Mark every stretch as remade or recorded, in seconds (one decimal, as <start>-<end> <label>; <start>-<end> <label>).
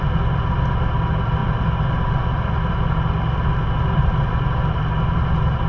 0.0-5.7 recorded